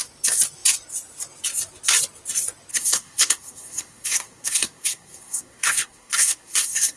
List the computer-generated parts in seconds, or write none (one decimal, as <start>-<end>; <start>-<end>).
2.7-7.0